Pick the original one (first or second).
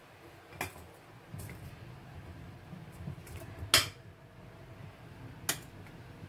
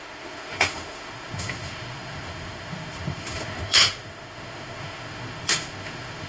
first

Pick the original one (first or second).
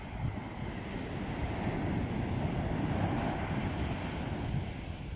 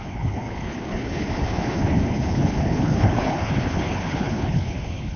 first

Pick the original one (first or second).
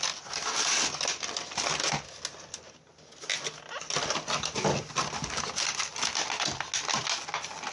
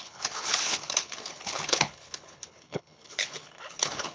first